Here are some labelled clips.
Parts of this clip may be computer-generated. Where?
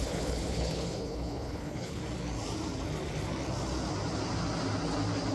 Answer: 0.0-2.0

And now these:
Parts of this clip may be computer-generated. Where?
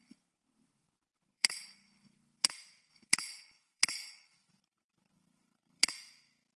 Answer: 0.0-2.5; 2.9-5.9